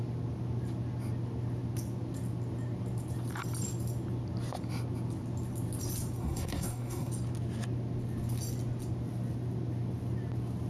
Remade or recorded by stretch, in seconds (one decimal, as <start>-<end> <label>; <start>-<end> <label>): 0.0-6.2 recorded; 6.2-7.1 remade; 7.1-10.7 recorded